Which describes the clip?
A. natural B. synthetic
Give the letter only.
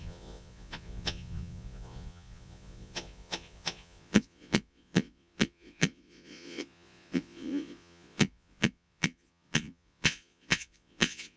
B